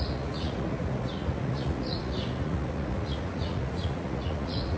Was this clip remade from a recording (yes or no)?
yes